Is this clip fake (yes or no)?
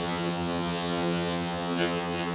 yes